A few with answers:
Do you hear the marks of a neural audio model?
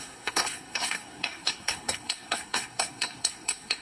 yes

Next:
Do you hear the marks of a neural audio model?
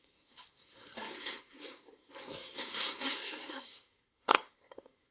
yes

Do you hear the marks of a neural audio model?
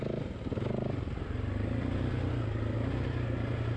no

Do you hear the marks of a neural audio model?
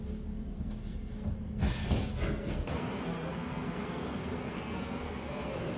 yes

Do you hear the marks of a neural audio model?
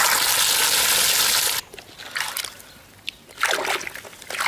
no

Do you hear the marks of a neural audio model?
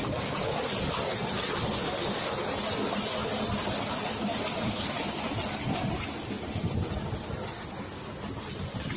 no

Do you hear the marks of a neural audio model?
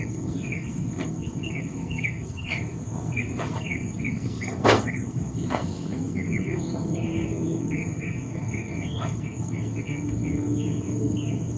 yes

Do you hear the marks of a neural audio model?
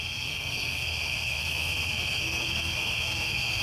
yes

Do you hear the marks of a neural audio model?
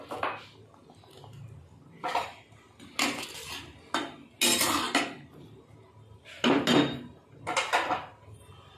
no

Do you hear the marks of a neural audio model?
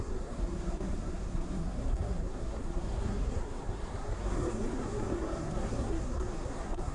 yes